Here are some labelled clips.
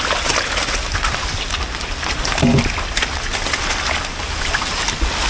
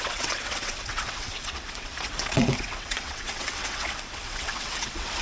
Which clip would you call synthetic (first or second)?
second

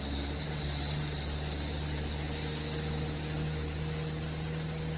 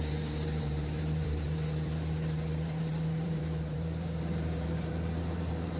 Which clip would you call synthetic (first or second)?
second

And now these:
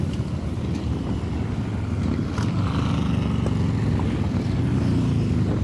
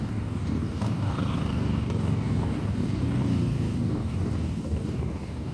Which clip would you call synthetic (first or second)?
second